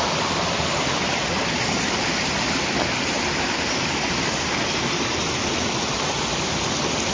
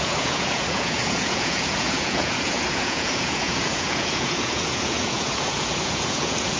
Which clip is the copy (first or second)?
second